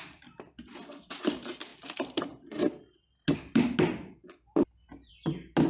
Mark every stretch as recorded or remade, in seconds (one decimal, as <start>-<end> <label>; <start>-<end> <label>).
0.0-5.7 recorded